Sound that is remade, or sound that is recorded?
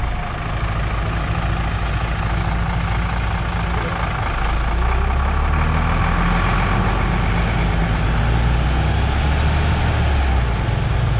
recorded